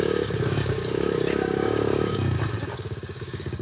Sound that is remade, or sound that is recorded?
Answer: remade